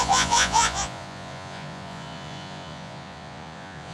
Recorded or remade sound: remade